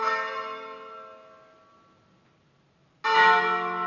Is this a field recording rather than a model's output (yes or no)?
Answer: yes